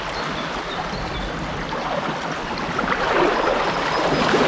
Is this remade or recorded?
recorded